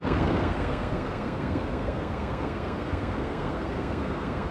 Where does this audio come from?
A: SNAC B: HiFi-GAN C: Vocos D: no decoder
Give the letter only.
A